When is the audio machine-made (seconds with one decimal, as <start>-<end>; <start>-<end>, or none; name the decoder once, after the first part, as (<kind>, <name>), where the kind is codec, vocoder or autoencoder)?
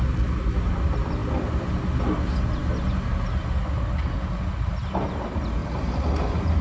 5.6-6.6 (vocoder, BigVGAN v2)